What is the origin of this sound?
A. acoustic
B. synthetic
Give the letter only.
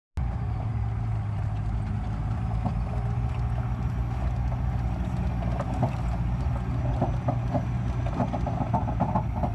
A